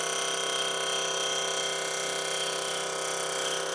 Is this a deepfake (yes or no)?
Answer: no